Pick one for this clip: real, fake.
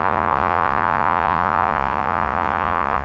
fake